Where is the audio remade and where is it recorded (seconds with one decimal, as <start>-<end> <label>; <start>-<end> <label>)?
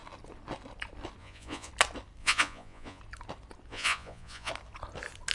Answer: 0.0-1.2 recorded; 1.2-1.7 remade; 1.7-2.2 recorded; 2.2-3.0 remade; 3.0-3.7 recorded; 3.7-4.5 remade; 4.5-5.3 recorded